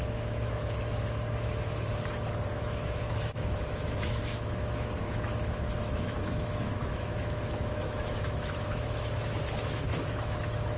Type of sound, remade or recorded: remade